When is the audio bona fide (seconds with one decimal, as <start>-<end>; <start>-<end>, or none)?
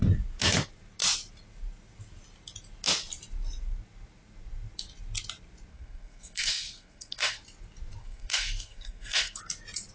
0.0-5.7; 7.4-8.0; 9.4-9.9